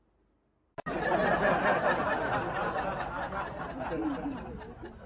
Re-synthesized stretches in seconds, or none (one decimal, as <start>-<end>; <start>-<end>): none